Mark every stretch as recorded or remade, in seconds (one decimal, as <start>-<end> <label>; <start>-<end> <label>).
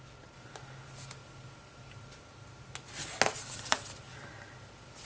0.0-5.1 recorded